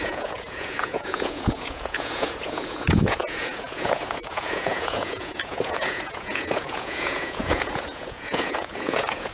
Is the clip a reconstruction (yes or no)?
yes